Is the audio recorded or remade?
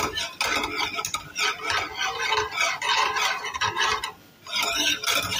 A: recorded